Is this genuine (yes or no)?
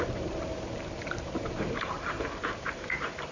no